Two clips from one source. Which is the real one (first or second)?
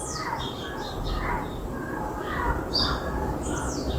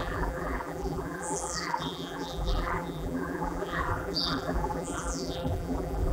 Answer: first